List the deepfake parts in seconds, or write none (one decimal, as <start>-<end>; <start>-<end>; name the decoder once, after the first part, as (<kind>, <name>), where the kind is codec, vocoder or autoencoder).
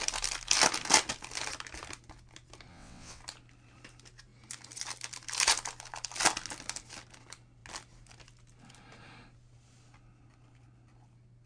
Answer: 2.7-3.2 (vocoder, WaveNeXt)